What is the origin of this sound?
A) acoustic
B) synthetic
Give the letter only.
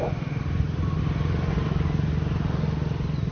A